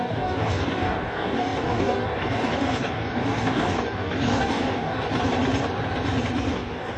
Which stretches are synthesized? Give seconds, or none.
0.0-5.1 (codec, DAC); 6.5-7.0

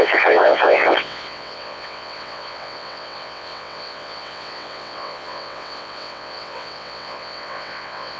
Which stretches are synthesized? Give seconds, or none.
0.0-8.2 (vocoder, WaveNeXt)

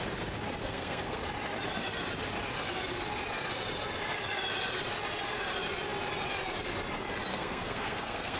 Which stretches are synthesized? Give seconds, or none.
0.6-1.2 (codec, SNAC); 7.3-8.4

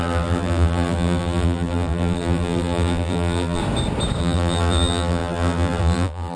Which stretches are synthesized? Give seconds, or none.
0.0-3.6 (vocoder, BigVGAN v2); 4.2-6.4

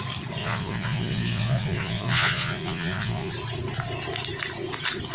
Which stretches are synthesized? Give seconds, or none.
0.4-3.3 (vocoder, Vocos)